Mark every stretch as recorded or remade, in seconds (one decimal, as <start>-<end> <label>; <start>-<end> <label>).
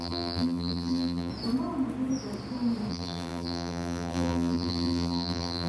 0.0-1.3 remade; 1.3-2.9 recorded; 2.9-5.7 remade